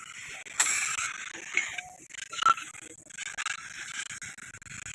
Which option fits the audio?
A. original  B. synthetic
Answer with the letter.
A